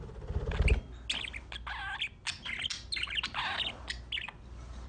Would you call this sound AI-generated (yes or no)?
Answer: no